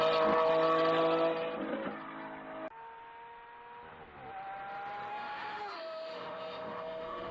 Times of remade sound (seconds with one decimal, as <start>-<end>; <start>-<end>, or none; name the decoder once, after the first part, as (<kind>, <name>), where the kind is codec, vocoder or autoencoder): 5.1-7.3 (autoencoder, DAC-VAE)